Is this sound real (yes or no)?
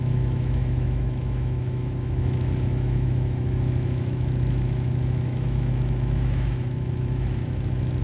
no